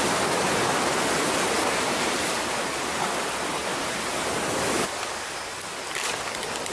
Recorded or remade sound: recorded